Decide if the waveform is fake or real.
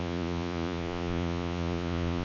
fake